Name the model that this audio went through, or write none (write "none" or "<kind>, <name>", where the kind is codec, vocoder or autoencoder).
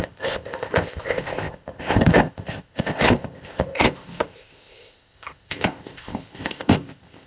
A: codec, ZipCodec